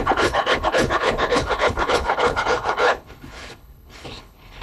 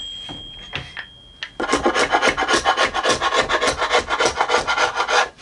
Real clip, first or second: second